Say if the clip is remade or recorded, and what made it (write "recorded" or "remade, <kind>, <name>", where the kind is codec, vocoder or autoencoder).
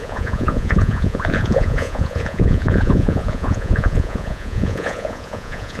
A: remade, vocoder, Vocos